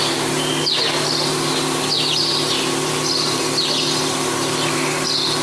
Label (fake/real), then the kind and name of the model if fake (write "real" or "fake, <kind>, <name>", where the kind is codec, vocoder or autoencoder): real